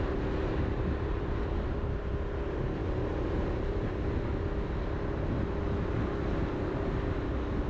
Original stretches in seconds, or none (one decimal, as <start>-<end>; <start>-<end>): 0.0-7.7

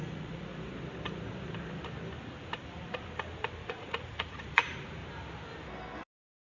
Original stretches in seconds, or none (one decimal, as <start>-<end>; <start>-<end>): 0.5-3.7; 5.0-6.0

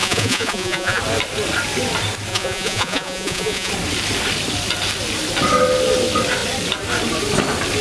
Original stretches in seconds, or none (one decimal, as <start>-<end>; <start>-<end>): 1.0-2.3; 3.7-7.8

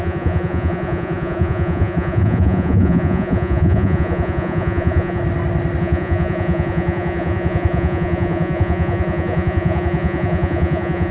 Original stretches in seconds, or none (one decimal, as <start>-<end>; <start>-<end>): 5.2-5.8

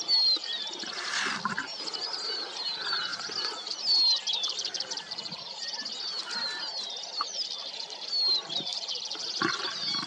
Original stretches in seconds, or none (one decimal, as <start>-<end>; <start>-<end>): 0.0-10.1

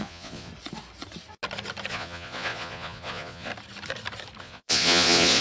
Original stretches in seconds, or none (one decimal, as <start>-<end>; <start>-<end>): 0.5-1.9; 3.5-4.4

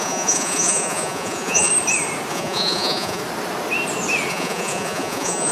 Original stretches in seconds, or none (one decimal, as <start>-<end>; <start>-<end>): 1.7-2.3; 3.2-4.3